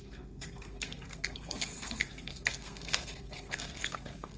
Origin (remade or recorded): remade